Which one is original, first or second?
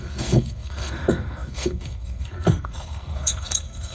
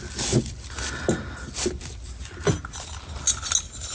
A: second